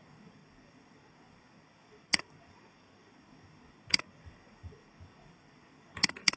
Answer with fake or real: fake